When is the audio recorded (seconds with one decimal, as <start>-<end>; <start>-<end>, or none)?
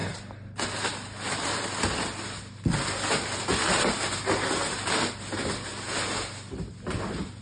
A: 0.0-7.4